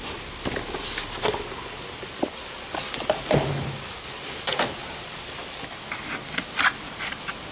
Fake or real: real